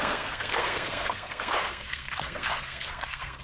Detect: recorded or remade remade